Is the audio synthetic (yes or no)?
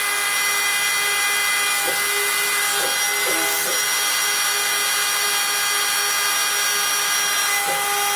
no